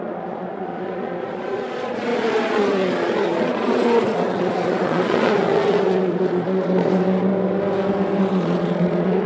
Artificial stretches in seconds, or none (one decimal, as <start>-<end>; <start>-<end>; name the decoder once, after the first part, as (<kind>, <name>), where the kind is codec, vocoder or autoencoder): 0.0-7.3 (vocoder, Vocos); 8.2-9.3